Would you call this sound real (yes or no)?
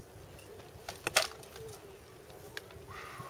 yes